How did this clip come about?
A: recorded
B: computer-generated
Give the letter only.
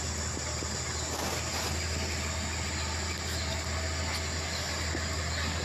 A